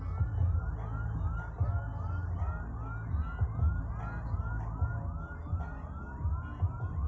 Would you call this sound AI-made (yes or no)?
no